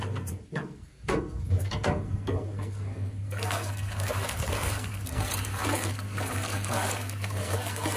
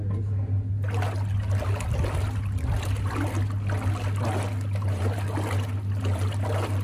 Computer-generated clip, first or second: first